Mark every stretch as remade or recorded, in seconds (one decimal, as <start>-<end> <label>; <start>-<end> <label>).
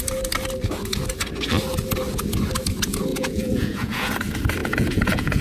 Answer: 0.0-3.1 recorded; 3.1-4.1 remade; 4.1-4.6 recorded; 4.6-5.4 remade